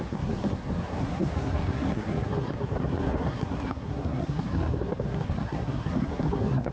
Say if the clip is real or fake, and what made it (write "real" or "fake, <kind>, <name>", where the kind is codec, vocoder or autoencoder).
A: fake, codec, SNAC